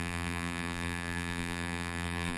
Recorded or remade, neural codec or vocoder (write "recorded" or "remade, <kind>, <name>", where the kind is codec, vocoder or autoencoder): remade, vocoder, BigVGAN v2